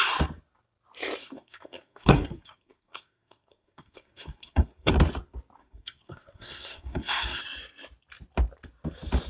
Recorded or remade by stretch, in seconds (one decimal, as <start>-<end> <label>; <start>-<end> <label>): 0.0-1.2 recorded; 1.2-4.9 remade; 4.9-5.6 recorded; 5.6-7.4 remade; 7.4-9.3 recorded